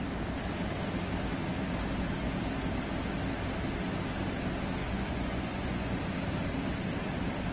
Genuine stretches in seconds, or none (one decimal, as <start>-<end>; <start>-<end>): 0.0-4.8; 6.0-7.5